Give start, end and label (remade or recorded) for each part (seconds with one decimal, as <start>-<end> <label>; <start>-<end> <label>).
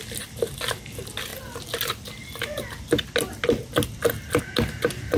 0.0-5.2 recorded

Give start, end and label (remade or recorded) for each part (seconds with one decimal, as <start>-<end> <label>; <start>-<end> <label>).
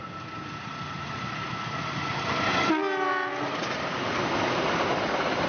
0.0-5.5 recorded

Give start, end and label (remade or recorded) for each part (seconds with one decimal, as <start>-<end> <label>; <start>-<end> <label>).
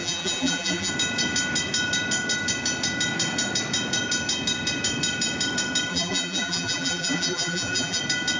0.0-0.9 remade; 0.9-5.9 recorded; 5.9-8.0 remade; 8.0-8.4 recorded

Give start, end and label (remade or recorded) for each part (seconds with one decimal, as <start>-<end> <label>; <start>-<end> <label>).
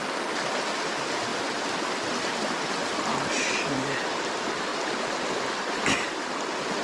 0.0-1.3 recorded; 1.3-2.2 remade; 2.2-4.7 recorded; 4.7-6.8 remade